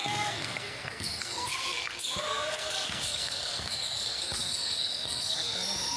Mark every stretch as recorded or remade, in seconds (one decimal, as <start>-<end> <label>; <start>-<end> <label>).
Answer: 0.0-6.0 remade

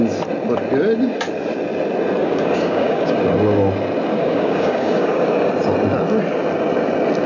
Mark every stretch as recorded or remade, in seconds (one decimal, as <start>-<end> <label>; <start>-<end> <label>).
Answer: 0.0-2.2 recorded; 2.2-3.2 remade; 3.2-4.1 recorded; 4.1-5.5 remade; 5.5-7.3 recorded

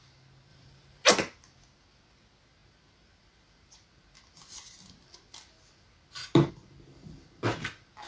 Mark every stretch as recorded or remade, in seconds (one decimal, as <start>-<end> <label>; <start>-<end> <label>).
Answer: 0.0-0.5 recorded; 0.5-1.1 remade; 1.1-8.1 recorded

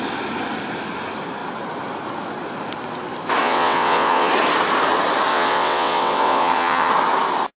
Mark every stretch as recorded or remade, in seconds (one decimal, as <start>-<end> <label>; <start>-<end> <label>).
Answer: 0.0-3.4 recorded; 3.4-4.3 remade; 4.3-5.3 recorded; 5.3-6.9 remade; 6.9-7.6 recorded

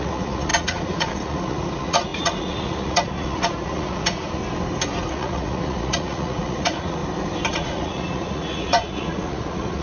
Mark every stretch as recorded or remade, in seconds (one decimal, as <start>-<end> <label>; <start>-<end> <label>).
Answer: 0.0-4.4 remade; 4.4-5.1 recorded; 5.1-7.0 remade; 7.0-7.5 recorded; 7.5-9.8 remade